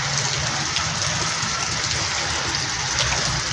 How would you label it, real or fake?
real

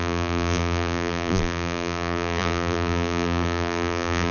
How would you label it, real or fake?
fake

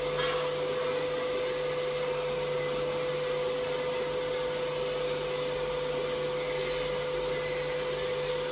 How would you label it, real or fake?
real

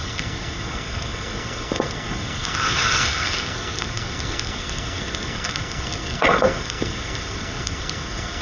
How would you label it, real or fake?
fake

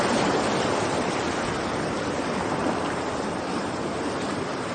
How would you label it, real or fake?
real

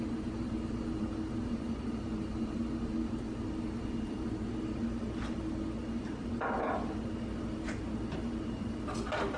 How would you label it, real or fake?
fake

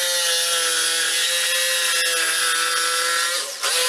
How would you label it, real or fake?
real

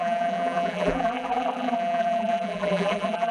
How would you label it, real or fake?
fake